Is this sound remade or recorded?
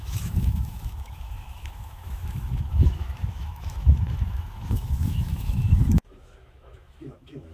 remade